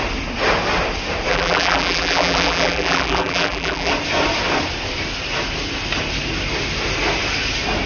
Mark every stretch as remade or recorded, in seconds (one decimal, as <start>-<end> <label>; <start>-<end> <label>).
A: 0.0-1.3 recorded; 1.3-3.9 remade; 3.9-7.9 recorded